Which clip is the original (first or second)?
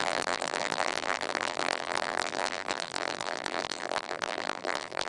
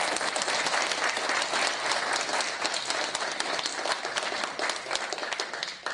second